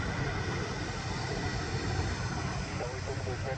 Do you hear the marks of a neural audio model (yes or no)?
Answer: yes